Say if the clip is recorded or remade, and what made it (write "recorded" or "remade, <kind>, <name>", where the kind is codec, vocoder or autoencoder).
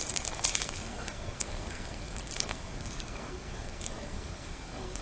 remade, codec, SNAC